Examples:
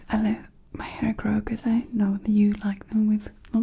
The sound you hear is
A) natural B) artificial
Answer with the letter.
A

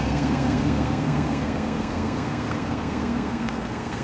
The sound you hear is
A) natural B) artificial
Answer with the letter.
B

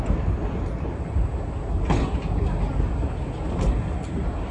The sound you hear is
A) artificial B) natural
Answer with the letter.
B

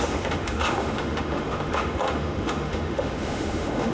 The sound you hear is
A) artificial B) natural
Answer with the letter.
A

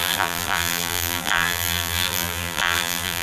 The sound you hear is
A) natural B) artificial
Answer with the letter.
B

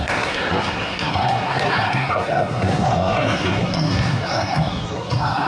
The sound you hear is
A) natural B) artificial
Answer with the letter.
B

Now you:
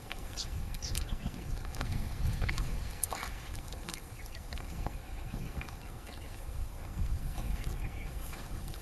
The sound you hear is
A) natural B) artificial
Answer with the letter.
B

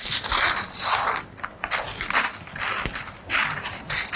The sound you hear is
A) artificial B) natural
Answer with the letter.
B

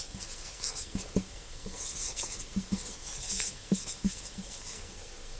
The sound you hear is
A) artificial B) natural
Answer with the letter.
A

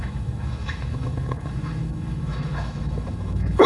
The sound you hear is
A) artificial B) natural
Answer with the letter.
A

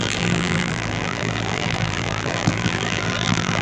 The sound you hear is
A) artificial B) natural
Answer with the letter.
A